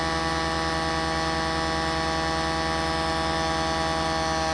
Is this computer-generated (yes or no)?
no